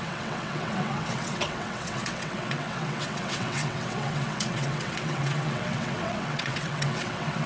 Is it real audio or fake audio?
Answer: fake